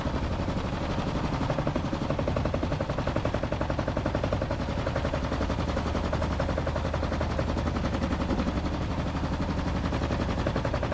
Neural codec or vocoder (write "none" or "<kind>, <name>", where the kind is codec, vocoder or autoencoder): none